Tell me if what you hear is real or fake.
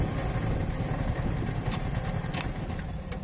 real